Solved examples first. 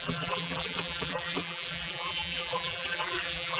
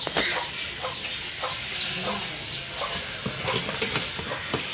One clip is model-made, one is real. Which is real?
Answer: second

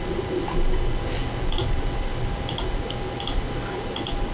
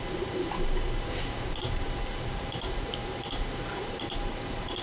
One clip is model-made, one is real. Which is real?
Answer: first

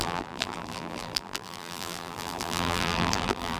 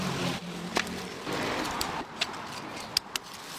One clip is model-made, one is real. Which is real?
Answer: second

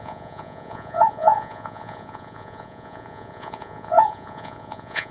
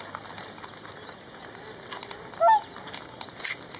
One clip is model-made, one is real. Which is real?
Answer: second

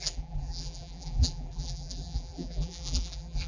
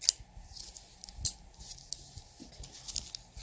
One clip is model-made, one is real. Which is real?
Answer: second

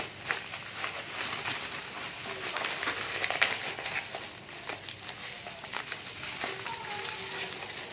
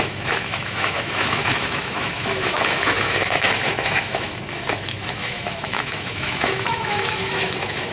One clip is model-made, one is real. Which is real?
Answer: first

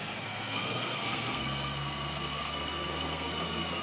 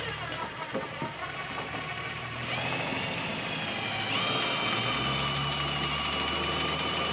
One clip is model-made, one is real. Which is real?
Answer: second